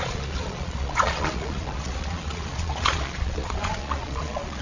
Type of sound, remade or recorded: remade